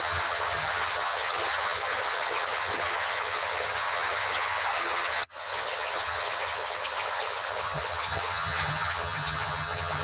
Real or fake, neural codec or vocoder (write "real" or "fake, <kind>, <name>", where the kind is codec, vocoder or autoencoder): fake, vocoder, HiFi-GAN